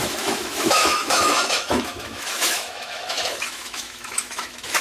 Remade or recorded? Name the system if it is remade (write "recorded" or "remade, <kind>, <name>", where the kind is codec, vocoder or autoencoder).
remade, autoencoder, DAC-VAE